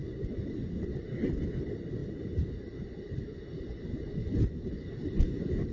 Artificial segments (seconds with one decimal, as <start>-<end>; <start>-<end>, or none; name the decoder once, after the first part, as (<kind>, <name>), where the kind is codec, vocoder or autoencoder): none